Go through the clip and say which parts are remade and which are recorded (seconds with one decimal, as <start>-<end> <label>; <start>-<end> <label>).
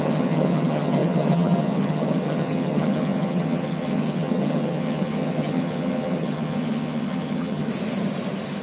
0.0-7.7 remade; 7.7-8.6 recorded